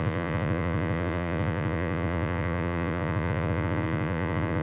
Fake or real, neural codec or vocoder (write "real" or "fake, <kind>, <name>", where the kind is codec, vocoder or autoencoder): fake, vocoder, Vocos